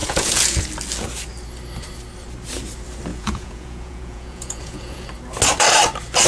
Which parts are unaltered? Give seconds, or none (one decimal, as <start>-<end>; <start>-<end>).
0.7-3.1; 5.1-6.3